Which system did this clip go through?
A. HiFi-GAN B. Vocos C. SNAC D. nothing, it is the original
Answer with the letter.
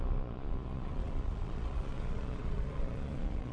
B